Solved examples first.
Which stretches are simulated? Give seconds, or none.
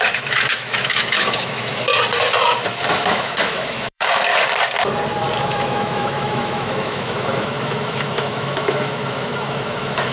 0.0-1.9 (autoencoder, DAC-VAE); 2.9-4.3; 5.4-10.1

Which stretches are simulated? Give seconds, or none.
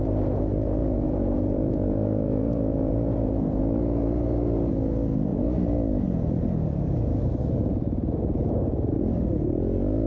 0.8-3.6 (vocoder, Vocos); 7.6-9.0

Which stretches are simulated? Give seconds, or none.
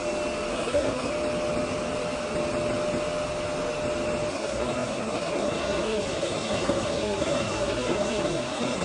0.5-1.1 (codec, SNAC); 4.3-8.8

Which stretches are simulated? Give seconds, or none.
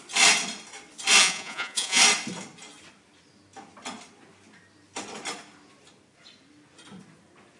1.2-2.0 (vocoder, Vocos)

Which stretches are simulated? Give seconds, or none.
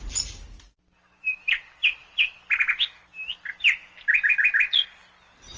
none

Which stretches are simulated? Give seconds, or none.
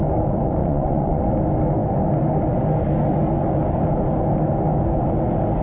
0.6-1.2 (vocoder, Vocos)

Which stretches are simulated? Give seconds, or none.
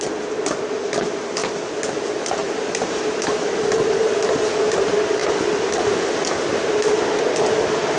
1.4-1.9 (vocoder, BigVGAN v2); 2.4-3.5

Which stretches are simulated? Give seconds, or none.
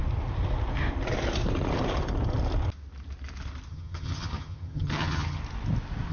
3.7-5.4 (vocoder, HiFi-GAN)